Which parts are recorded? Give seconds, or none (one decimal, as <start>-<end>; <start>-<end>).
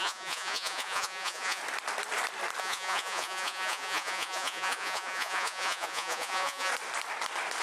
1.6-2.6; 6.7-7.6